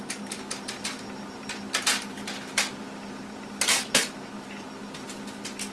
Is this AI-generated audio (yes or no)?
no